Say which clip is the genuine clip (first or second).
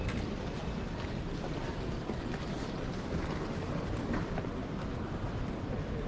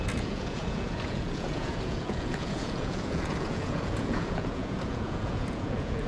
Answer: first